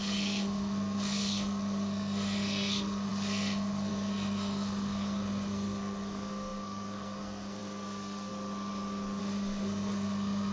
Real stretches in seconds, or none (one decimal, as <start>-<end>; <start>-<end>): 8.3-9.2